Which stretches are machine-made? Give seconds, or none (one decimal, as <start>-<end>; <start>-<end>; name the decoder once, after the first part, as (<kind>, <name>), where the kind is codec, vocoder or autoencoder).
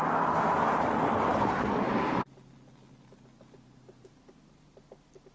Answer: none